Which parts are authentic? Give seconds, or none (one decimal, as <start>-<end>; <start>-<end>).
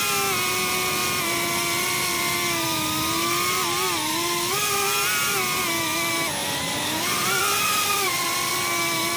0.0-1.0; 2.3-6.4; 8.5-9.2